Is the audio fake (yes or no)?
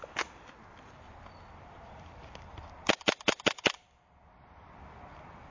no